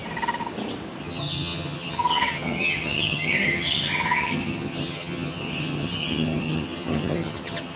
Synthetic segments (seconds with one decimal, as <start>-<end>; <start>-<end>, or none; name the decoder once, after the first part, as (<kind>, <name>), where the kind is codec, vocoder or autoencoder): 1.0-7.8 (vocoder, HiFi-GAN)